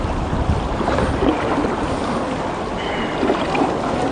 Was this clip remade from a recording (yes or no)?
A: no